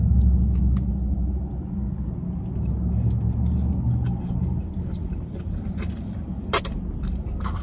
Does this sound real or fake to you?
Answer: real